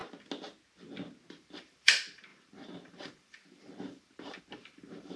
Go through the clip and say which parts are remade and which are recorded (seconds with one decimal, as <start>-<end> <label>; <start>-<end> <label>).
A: 0.0-1.3 recorded; 1.3-5.2 remade